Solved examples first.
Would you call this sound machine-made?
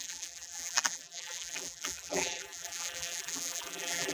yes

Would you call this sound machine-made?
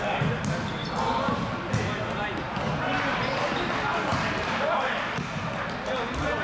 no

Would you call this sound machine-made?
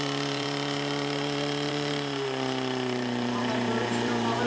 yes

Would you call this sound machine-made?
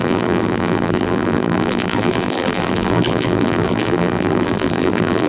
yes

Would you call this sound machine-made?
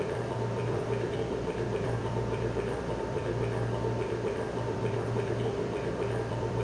yes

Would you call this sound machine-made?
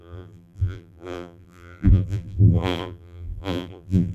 yes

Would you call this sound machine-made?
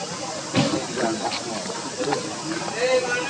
no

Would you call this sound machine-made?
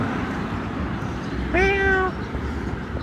no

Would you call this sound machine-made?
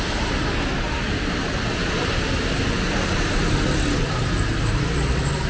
no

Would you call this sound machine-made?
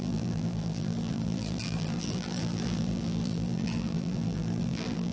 yes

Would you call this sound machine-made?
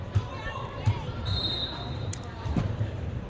yes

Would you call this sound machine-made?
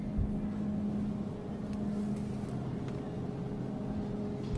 no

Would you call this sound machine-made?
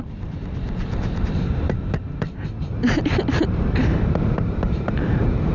yes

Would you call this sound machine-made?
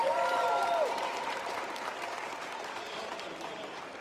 yes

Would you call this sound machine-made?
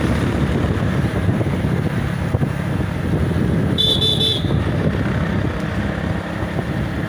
no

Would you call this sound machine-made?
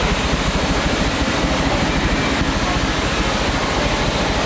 no